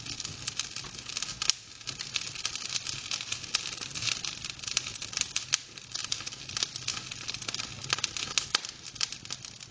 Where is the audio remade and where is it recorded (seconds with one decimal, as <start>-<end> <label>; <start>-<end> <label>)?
0.0-9.7 recorded